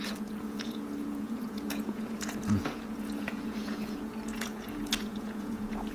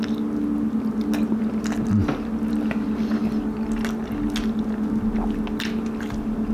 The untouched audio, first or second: second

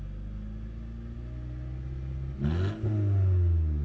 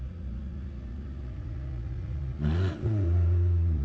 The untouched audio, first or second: first